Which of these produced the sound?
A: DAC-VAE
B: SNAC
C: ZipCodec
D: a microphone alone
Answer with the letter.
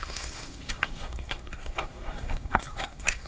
B